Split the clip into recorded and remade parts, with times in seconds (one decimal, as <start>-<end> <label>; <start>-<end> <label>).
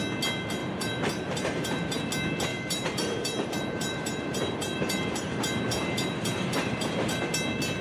0.0-0.6 recorded; 0.6-2.0 remade; 2.0-2.5 recorded; 2.5-7.2 remade; 7.2-7.8 recorded